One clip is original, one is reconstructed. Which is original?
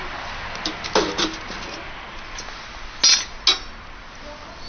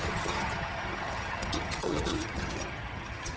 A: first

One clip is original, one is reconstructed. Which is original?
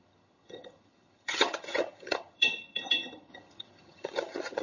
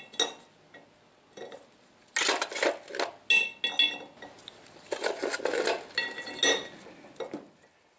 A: second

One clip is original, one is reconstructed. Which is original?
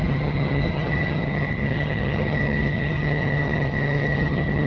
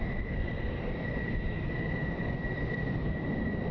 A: second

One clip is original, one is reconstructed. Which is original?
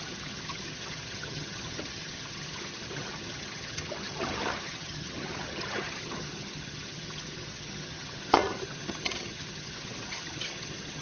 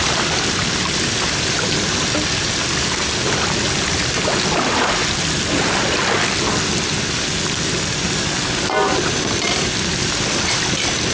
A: second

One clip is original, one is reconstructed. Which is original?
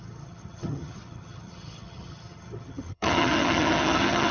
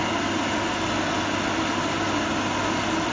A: second